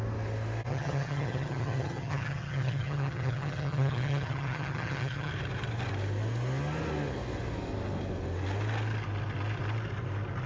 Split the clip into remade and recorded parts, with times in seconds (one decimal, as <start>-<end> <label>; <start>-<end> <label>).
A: 0.0-0.7 recorded; 0.7-5.3 remade; 5.3-10.5 recorded